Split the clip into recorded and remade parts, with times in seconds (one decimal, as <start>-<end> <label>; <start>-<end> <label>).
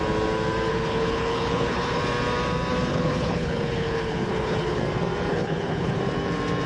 0.0-0.7 recorded; 0.7-2.0 remade; 2.0-2.9 recorded; 2.9-4.8 remade; 4.8-5.3 recorded; 5.3-6.0 remade; 6.0-6.7 recorded